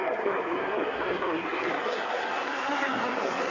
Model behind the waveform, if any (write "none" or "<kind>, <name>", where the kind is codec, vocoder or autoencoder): codec, SNAC